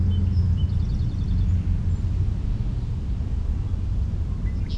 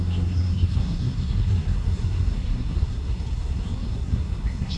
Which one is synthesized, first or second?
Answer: second